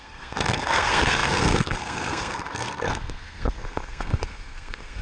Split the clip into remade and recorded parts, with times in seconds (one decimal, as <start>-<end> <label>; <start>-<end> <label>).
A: 0.0-5.0 remade